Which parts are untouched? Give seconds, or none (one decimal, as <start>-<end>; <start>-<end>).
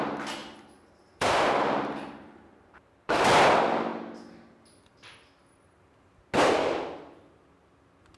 0.0-0.4; 3.2-8.2